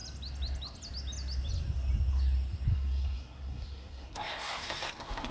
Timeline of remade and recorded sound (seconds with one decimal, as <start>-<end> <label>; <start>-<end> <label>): 0.0-2.7 recorded; 2.7-5.3 remade